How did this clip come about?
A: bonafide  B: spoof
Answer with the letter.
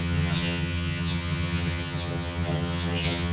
B